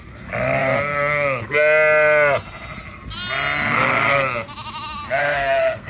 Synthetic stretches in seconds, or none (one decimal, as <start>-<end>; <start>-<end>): 5.2-5.9